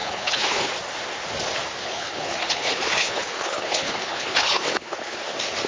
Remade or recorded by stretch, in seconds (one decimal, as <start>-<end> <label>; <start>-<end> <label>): 0.0-0.7 remade; 0.7-1.8 recorded; 1.8-5.2 remade; 5.2-5.7 recorded